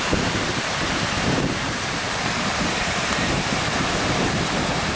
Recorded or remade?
remade